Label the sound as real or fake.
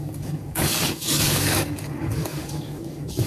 fake